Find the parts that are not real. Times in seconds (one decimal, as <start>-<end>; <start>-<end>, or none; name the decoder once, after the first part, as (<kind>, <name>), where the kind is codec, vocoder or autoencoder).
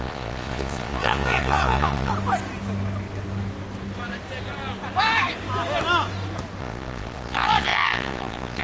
0.0-2.1 (vocoder, Vocos); 6.6-8.6